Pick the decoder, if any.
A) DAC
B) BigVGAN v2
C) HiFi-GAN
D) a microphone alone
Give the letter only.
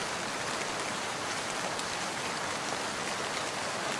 B